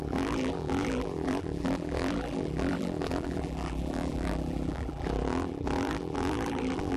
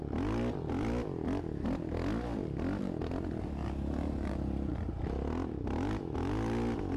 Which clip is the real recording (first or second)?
second